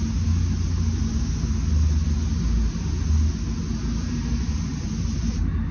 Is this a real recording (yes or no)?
yes